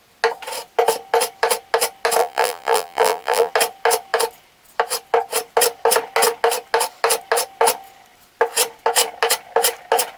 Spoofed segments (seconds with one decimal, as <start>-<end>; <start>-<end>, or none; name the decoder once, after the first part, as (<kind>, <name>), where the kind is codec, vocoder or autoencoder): 2.2-3.5 (vocoder, BigVGAN v2)